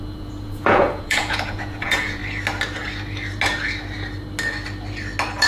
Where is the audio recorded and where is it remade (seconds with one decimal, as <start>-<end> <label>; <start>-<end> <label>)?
0.0-2.2 remade; 2.2-5.5 recorded